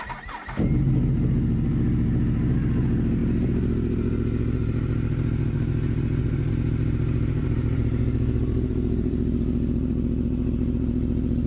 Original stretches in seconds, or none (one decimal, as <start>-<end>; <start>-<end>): 0.0-7.4